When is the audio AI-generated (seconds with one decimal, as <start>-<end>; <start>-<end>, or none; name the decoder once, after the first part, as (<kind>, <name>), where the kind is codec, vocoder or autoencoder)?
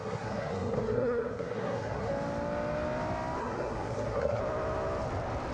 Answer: 0.0-2.1 (codec, SNAC); 3.4-4.4